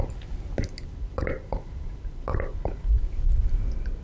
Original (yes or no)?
yes